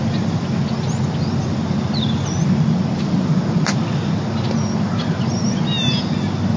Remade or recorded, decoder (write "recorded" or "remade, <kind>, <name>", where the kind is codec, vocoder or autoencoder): recorded